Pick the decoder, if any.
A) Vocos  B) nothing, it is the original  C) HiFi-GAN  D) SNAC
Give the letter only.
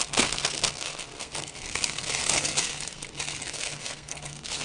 D